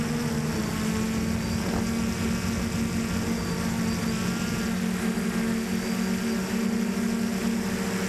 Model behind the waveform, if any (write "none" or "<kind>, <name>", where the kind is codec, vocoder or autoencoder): none